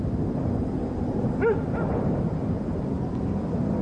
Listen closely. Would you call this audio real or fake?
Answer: real